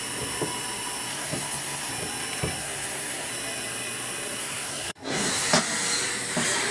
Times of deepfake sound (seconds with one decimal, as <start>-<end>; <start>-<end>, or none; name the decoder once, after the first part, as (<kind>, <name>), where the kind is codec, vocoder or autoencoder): 1.1-1.9 (codec, SNAC); 2.6-3.3; 4.4-5.5